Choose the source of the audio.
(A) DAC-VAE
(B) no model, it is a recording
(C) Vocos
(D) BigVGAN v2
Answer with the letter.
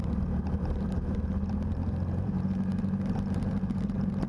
D